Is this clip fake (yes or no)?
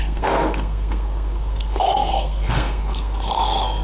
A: yes